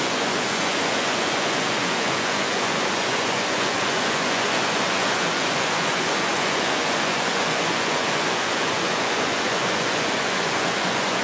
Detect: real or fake fake